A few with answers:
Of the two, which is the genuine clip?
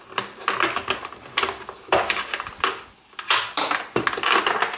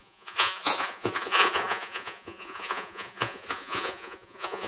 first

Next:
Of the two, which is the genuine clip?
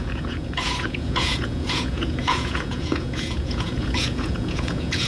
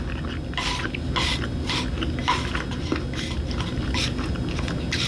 second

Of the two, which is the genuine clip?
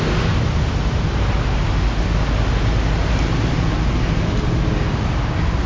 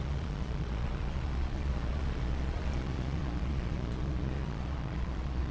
first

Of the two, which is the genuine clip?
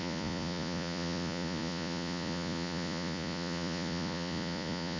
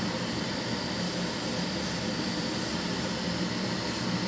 second